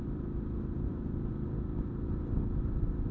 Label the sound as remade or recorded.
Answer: remade